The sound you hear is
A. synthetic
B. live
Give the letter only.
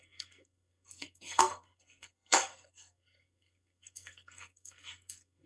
A